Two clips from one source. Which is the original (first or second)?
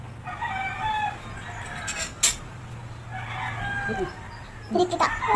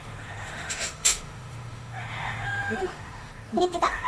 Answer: first